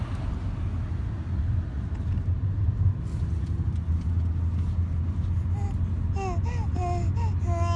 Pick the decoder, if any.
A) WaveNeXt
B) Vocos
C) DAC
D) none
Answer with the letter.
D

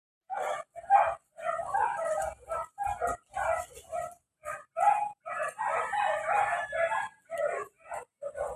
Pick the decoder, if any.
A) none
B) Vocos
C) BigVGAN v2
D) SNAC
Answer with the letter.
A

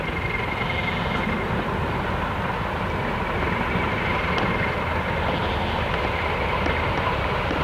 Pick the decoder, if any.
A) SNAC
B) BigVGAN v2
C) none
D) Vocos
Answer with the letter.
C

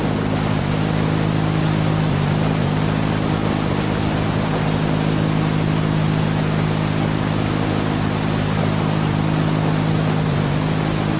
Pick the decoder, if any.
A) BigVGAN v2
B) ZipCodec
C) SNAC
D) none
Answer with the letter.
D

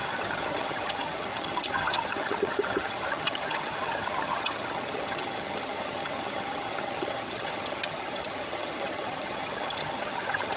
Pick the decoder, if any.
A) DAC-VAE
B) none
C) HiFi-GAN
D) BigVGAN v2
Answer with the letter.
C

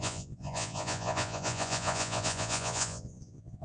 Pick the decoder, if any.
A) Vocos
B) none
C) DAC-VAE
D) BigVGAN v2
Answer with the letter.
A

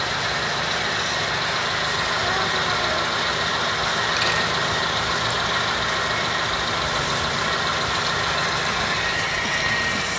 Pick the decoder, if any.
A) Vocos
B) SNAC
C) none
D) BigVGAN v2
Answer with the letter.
C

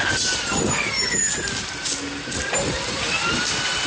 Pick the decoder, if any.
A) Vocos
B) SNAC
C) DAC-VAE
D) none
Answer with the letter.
D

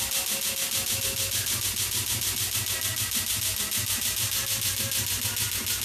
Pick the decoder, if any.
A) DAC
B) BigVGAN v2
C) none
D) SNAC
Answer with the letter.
C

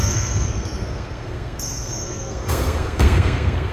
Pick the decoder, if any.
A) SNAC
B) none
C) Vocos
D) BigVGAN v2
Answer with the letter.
A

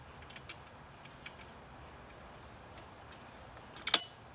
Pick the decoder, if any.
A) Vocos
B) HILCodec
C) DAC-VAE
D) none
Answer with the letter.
D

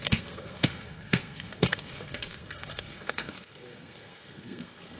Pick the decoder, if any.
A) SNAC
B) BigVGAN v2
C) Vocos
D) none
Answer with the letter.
A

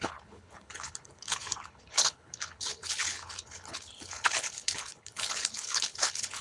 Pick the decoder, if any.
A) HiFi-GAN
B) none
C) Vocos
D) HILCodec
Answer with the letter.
D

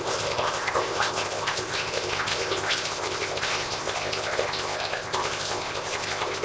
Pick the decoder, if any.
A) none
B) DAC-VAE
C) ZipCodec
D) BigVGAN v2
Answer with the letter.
C